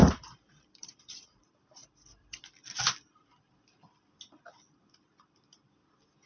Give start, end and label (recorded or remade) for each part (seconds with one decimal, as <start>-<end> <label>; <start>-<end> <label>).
0.0-1.4 remade; 1.4-6.3 recorded